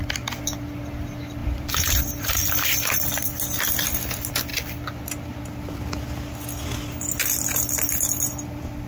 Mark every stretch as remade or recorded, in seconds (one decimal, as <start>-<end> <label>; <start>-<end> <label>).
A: 0.0-1.4 recorded; 1.4-3.3 remade; 3.3-8.9 recorded